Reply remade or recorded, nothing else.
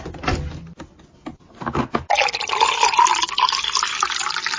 recorded